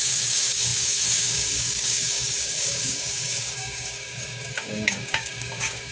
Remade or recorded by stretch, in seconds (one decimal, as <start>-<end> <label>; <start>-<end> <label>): 0.0-5.9 remade